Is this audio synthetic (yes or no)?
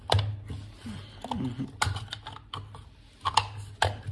no